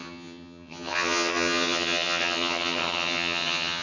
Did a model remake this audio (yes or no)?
yes